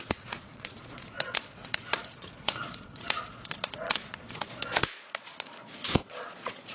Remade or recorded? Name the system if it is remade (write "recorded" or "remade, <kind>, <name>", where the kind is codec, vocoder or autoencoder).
remade, vocoder, Vocos